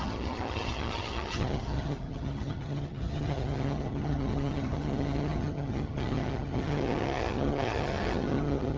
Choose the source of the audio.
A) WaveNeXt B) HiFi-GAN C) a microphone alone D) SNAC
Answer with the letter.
B